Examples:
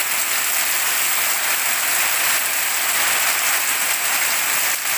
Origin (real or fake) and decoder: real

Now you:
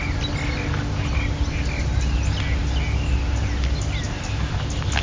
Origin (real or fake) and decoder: real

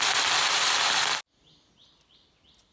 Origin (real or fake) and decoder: real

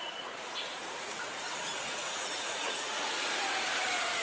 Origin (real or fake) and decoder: fake, vocoder, Vocos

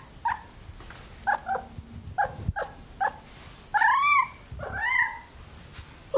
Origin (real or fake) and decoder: real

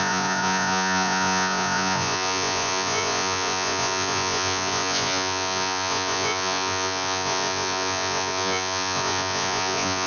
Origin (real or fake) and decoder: fake, vocoder, Vocos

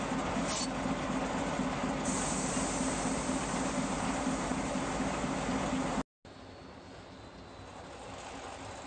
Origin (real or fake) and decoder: real